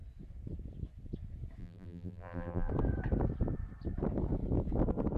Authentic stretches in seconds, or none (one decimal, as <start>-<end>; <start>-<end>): 0.0-1.6; 2.7-5.2